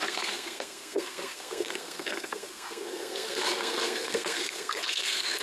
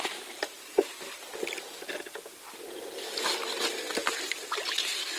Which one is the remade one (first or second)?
first